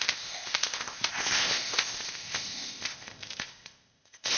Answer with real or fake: fake